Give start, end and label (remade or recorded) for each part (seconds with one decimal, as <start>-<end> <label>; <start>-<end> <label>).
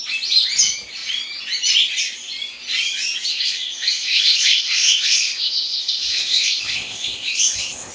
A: 0.0-3.3 recorded; 3.3-7.9 remade